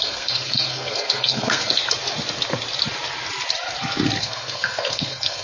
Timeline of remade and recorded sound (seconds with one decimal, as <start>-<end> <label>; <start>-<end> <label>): 0.0-1.8 remade; 1.8-4.2 recorded; 4.2-5.4 remade